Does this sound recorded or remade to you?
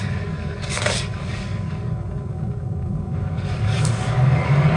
remade